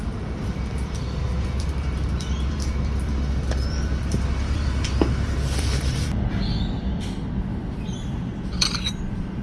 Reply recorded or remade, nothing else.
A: remade